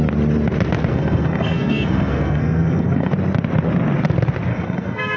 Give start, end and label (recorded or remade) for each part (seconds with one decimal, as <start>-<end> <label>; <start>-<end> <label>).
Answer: 0.0-0.9 recorded; 0.9-3.1 remade; 3.1-4.5 recorded; 4.5-5.2 remade